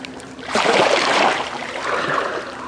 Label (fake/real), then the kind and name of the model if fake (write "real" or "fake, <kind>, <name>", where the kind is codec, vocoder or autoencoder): fake, vocoder, BigVGAN v2